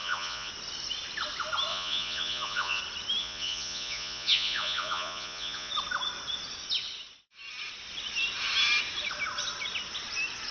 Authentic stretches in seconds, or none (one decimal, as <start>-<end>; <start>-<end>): 0.5-1.7; 2.8-3.2; 5.7-10.5